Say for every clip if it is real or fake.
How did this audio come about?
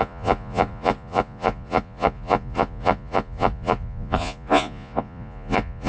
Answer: fake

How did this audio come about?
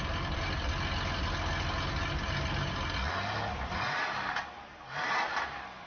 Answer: real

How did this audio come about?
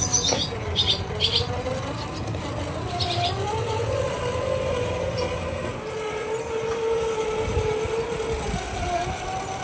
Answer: real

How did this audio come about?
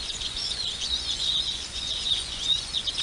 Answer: fake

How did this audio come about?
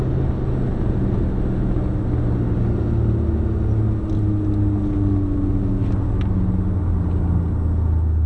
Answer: real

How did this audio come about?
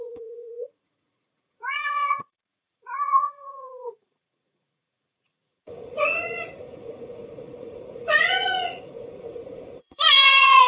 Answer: fake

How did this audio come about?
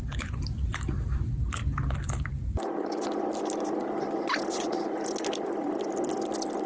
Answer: real